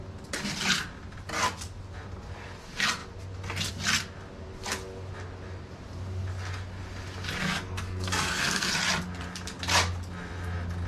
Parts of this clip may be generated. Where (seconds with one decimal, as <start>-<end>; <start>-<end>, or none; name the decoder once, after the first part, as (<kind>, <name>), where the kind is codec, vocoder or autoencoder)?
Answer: 7.4-8.7 (codec, SNAC)